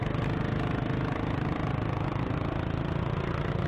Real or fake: real